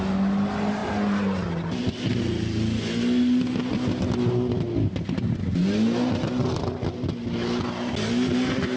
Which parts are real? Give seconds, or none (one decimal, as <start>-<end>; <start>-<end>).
0.0-8.8